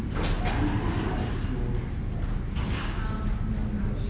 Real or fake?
real